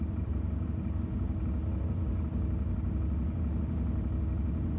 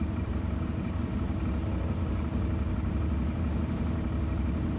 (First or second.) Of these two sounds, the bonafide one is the first